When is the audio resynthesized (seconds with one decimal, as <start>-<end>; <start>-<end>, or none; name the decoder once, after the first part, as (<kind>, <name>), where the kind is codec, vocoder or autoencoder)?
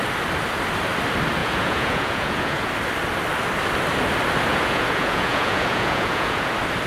1.4-2.7 (vocoder, Vocos); 4.5-6.5